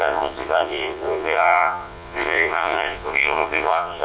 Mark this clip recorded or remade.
remade